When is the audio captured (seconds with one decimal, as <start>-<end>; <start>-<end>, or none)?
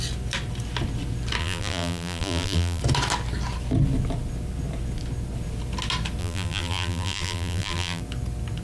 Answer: 0.0-1.4; 2.8-6.2; 8.0-8.6